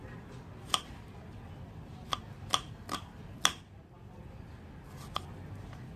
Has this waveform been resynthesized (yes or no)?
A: no